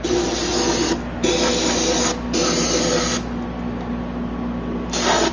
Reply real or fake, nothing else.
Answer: real